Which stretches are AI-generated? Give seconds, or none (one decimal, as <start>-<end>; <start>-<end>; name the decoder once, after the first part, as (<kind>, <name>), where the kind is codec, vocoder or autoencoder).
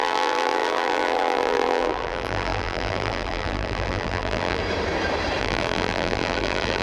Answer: 0.0-4.6 (vocoder, BigVGAN v2); 5.4-6.8